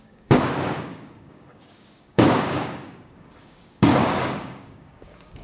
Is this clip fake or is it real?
fake